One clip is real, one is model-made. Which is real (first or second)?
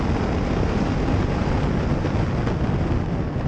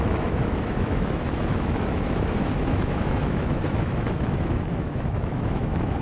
first